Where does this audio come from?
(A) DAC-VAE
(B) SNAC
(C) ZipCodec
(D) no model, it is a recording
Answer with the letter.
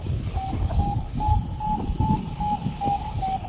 D